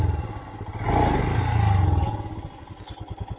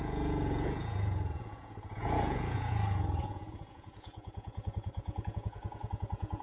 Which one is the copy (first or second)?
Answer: second